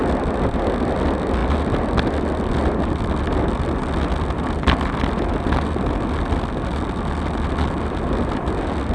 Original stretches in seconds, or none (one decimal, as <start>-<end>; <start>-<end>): 0.0-8.9